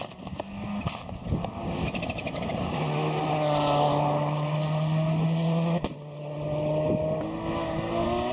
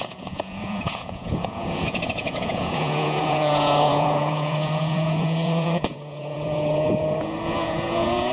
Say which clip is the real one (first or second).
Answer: first